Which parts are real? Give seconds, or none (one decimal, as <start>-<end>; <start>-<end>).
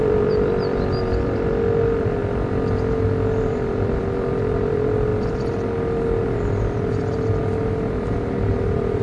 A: 2.2-3.4; 5.1-9.0